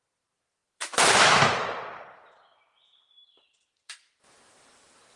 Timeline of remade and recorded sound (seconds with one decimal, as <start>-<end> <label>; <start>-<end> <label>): 0.0-5.2 remade